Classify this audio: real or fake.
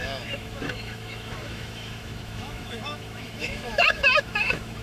fake